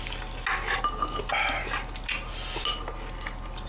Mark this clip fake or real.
real